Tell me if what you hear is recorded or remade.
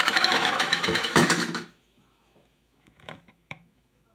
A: remade